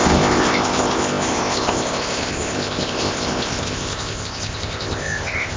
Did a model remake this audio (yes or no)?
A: yes